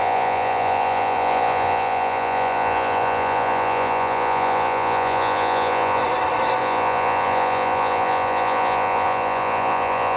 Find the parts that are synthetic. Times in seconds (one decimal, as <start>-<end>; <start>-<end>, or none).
0.0-6.0; 6.6-10.2